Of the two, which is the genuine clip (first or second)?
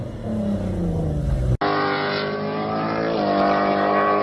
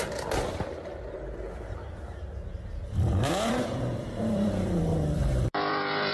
first